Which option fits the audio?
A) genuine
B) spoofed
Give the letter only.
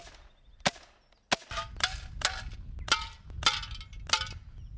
A